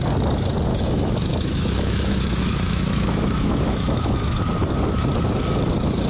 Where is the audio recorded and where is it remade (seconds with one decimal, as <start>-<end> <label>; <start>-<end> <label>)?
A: 0.0-0.7 recorded; 0.7-4.4 remade; 4.4-6.1 recorded